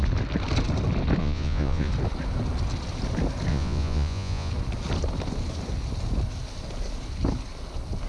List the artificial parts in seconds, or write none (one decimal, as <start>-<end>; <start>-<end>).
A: 1.2-1.9; 3.5-4.5